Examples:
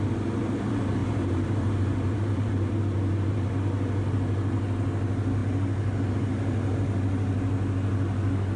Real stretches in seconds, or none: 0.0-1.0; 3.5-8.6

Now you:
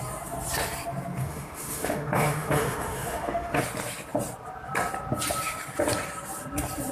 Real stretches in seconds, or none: 0.0-1.2; 3.6-6.9

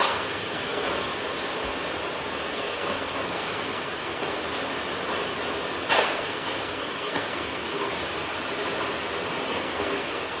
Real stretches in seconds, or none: 1.1-2.5; 4.4-5.9; 8.0-9.5